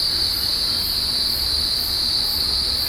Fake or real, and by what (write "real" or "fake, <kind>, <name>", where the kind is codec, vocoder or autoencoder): real